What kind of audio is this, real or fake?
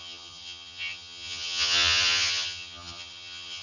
fake